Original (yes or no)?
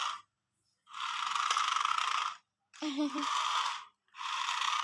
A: no